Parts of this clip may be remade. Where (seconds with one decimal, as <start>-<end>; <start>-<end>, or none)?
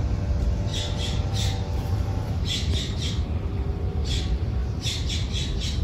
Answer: 0.7-3.1